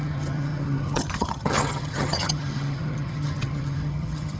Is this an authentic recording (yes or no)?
no